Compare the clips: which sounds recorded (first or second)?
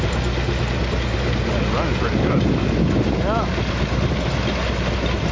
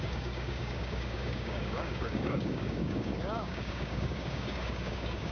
first